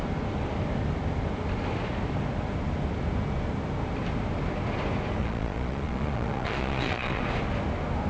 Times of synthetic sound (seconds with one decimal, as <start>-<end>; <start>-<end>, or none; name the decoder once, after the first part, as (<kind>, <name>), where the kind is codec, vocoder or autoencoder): 5.2-7.2 (vocoder, Vocos)